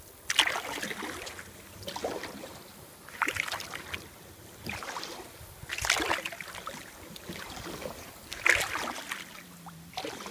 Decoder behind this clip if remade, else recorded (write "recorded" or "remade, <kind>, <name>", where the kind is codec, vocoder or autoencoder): recorded